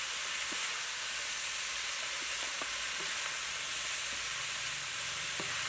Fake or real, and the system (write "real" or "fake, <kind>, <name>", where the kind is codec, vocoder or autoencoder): real